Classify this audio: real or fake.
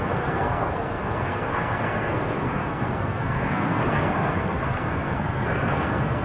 fake